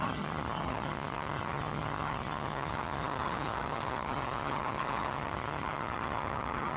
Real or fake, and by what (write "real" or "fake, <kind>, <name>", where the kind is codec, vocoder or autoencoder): fake, vocoder, HiFi-GAN